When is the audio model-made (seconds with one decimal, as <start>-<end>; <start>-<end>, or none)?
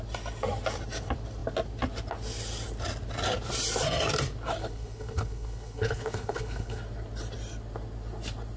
4.6-6.8